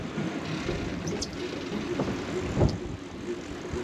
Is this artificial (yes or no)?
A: no